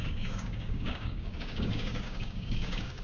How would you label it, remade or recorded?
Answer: remade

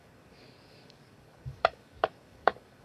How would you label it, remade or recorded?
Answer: remade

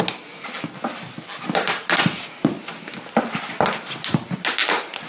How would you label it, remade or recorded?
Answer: recorded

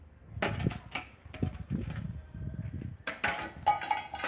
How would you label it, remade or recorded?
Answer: recorded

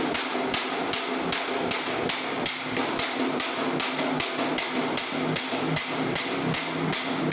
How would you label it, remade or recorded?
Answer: recorded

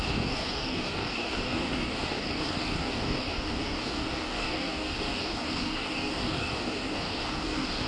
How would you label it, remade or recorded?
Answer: remade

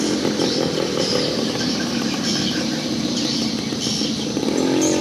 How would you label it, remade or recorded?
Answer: recorded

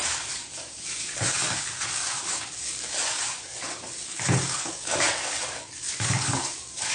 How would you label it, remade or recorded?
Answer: remade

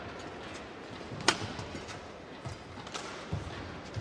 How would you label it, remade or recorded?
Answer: recorded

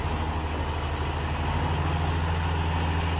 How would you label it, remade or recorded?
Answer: recorded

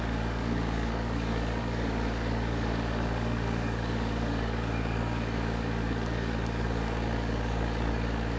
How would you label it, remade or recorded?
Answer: remade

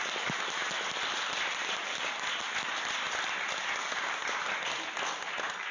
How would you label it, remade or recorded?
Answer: recorded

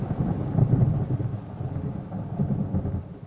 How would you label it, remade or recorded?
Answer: recorded